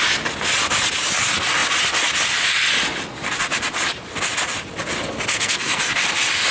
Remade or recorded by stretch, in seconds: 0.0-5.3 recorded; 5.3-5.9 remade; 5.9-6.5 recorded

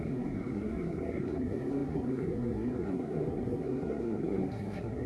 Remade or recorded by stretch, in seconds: 0.0-5.1 remade